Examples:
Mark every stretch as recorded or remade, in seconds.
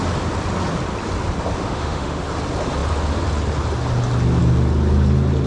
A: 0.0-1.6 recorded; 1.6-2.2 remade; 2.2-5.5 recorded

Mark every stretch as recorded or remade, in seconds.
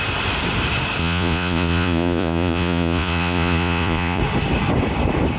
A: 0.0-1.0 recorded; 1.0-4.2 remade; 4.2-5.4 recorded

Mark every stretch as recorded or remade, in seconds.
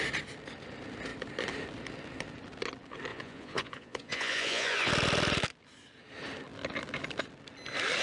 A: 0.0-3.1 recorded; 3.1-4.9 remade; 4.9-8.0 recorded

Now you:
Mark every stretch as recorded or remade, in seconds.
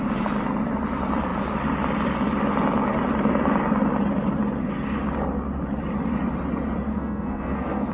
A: 0.0-6.9 recorded; 6.9-7.9 remade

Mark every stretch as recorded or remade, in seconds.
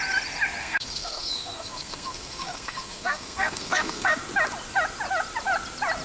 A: 0.0-0.6 recorded; 0.6-4.2 remade; 4.2-6.0 recorded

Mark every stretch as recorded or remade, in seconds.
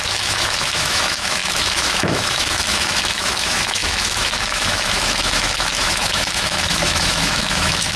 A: 0.0-8.0 remade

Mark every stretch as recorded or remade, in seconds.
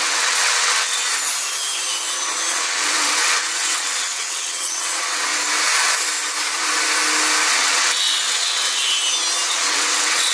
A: 0.0-1.0 remade; 1.0-2.5 recorded; 2.5-5.3 remade; 5.3-7.5 recorded; 7.5-8.8 remade; 8.8-9.5 recorded; 9.5-10.3 remade